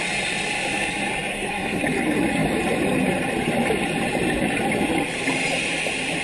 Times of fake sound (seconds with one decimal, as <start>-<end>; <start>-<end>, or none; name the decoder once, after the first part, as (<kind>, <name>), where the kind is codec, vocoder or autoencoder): 1.3-1.8 (codec, SNAC)